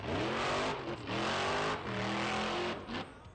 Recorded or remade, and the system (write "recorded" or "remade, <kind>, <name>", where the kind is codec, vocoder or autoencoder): recorded